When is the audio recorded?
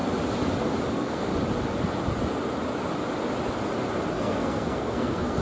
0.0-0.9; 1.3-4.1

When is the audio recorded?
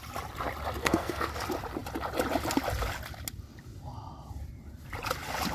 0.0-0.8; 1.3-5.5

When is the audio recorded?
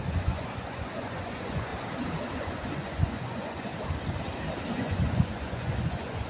1.7-2.3; 3.7-4.7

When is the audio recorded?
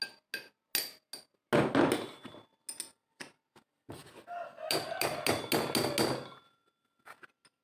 0.0-7.6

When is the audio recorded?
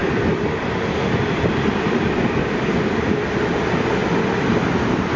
0.0-4.0; 4.7-5.2